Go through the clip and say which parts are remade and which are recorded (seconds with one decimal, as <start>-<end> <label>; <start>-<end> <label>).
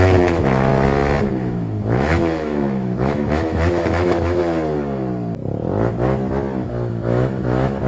0.0-0.7 remade; 0.7-1.3 recorded; 1.3-4.4 remade; 4.4-6.7 recorded; 6.7-7.9 remade